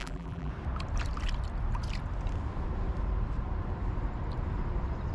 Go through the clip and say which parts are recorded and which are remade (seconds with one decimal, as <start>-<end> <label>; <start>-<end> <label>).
0.0-0.5 remade; 0.5-5.1 recorded